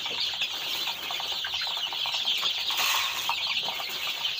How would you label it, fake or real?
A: real